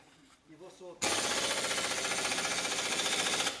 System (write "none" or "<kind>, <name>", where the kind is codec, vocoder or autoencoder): none